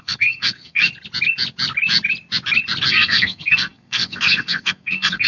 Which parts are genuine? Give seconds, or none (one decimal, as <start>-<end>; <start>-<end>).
0.8-2.9